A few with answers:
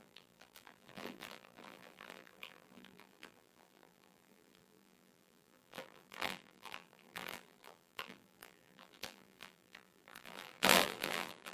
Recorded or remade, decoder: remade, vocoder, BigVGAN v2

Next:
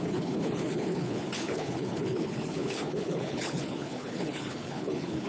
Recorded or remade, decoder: remade, codec, HILCodec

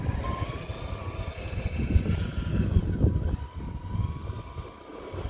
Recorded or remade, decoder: recorded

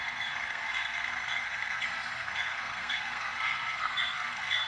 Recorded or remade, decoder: remade, codec, SNAC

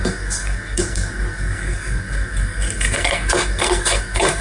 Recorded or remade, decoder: remade, codec, SNAC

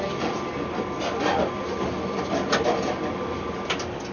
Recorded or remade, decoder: recorded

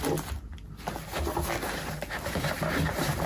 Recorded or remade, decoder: recorded